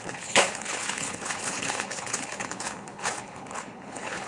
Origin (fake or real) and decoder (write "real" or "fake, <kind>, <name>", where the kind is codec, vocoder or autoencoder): fake, codec, HILCodec